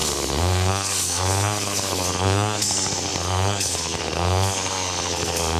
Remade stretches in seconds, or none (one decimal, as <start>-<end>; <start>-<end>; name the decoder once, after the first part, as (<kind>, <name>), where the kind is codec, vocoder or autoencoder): 0.0-5.6 (codec, SNAC)